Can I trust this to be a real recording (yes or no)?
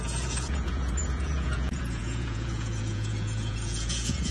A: no